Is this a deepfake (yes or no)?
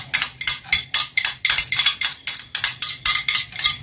no